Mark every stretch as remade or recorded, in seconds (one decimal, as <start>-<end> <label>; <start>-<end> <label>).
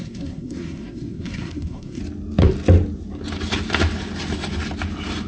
0.0-2.0 remade; 2.0-5.3 recorded